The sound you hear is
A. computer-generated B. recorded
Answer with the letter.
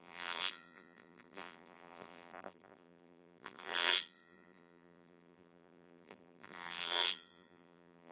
A